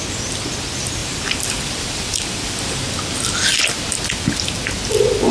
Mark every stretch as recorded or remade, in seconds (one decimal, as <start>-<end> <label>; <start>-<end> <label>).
0.0-1.0 recorded; 1.0-2.7 remade; 2.7-5.3 recorded